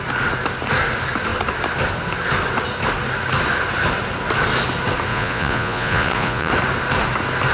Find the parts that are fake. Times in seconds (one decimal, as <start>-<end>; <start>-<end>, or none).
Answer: 5.1-6.5